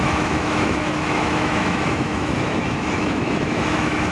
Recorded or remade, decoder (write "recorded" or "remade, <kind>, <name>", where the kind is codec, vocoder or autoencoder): remade, autoencoder, DAC-VAE